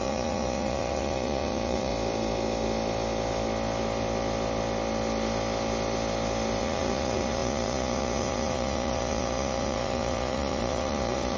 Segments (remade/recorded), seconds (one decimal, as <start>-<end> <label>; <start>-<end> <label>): 0.0-1.9 remade; 1.9-6.6 recorded; 6.6-11.4 remade